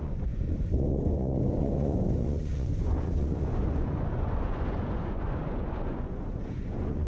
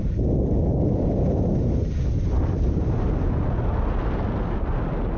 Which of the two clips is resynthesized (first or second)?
first